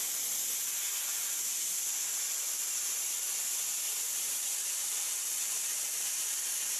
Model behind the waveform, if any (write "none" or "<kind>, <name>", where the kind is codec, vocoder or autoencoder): none